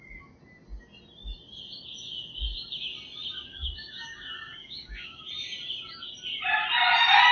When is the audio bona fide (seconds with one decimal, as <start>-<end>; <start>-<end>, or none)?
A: 0.0-3.5; 5.3-7.3